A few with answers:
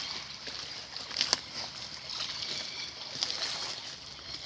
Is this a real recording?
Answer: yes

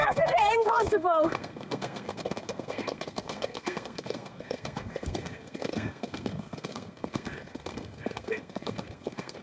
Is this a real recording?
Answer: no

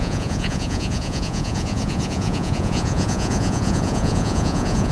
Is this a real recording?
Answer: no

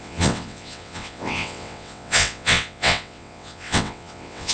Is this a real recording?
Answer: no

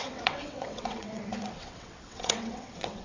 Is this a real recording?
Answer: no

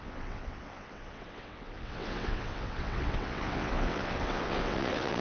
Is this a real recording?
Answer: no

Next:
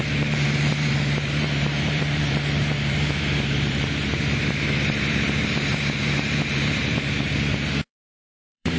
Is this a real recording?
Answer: no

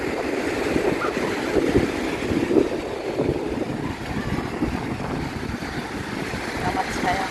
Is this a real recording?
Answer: yes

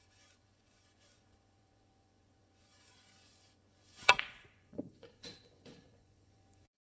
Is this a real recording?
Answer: no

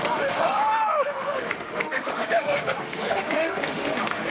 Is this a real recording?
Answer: no